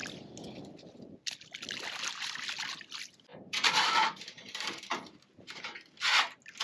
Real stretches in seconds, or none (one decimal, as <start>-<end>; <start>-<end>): 0.0-3.3; 5.6-6.6